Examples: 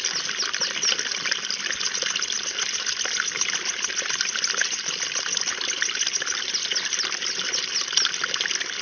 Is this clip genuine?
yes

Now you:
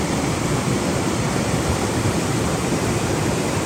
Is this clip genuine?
no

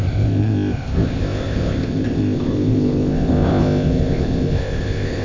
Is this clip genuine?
no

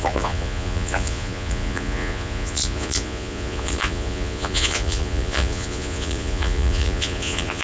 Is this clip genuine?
no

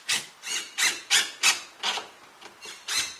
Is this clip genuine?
yes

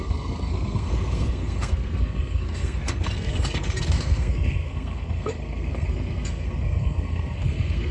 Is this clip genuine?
no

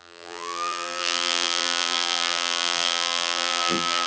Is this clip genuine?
no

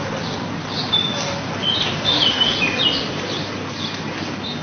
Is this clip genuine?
yes